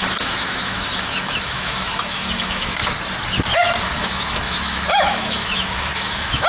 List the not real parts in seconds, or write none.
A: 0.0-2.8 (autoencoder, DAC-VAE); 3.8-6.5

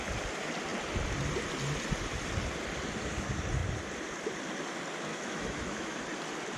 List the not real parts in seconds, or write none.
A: 5.1-6.0 (autoencoder, DAC-VAE)

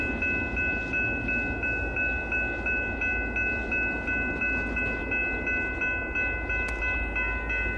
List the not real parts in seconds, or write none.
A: none